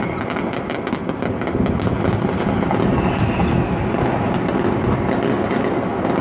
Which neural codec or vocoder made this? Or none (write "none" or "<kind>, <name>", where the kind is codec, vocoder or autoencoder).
none